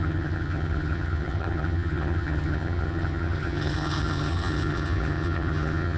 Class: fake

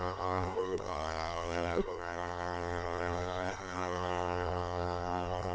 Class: fake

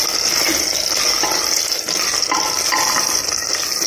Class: real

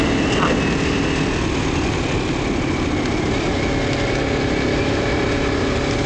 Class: real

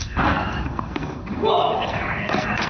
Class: fake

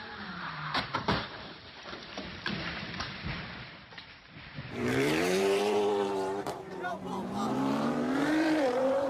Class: fake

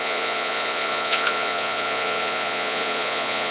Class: fake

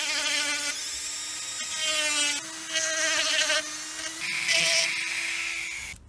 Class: real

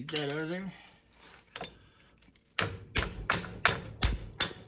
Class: real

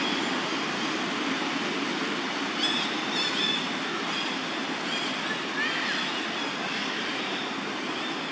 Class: real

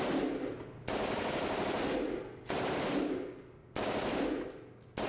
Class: real